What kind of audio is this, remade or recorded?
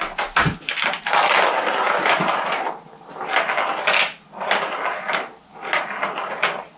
recorded